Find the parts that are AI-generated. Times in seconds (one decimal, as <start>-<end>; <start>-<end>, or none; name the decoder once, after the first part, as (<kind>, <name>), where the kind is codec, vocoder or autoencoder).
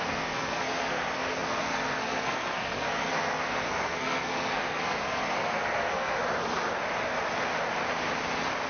0.0-6.2 (codec, SNAC)